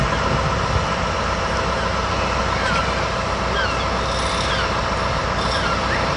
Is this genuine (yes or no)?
yes